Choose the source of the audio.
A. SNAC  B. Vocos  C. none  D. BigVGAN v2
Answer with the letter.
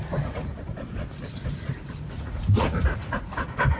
B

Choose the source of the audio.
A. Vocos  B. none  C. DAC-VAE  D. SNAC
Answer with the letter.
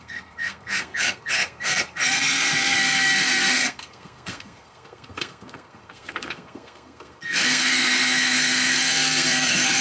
D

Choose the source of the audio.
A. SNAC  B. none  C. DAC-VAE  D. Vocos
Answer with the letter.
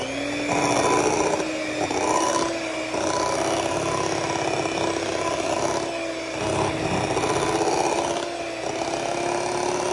B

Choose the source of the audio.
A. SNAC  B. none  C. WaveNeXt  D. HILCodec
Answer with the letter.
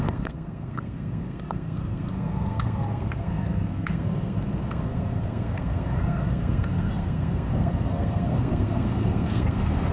A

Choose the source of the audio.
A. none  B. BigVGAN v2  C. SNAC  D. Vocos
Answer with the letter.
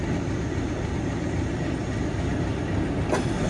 A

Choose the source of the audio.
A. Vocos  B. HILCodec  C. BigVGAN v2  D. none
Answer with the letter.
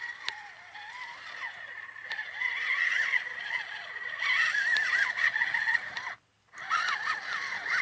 D